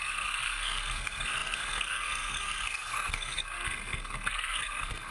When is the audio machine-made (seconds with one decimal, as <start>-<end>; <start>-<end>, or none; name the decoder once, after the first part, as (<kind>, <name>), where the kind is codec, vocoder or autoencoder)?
0.0-5.1 (codec, SNAC)